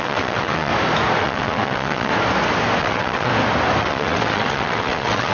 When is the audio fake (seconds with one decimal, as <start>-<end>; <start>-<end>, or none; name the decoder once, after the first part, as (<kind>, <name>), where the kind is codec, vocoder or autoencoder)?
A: 0.0-0.7 (vocoder, WaveNeXt); 1.2-2.1; 2.8-3.3; 3.8-5.3